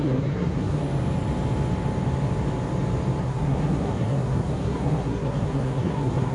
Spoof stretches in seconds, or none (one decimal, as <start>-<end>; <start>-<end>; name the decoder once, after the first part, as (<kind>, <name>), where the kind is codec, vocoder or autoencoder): 0.0-0.8 (codec, SNAC); 3.2-6.3